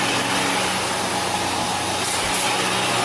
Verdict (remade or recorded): recorded